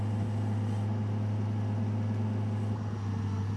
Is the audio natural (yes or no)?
yes